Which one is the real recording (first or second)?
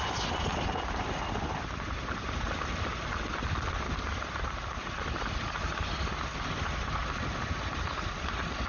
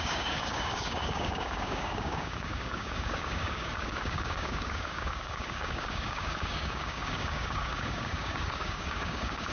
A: first